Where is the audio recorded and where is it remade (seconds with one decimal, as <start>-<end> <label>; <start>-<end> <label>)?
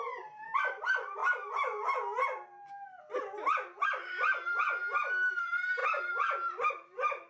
0.0-1.2 remade; 1.2-5.3 recorded; 5.3-7.3 remade